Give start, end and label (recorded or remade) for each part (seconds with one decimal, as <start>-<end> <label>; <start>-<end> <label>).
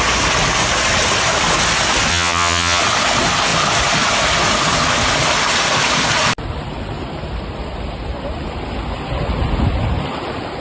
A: 0.0-2.1 recorded; 2.1-2.8 remade; 2.8-10.6 recorded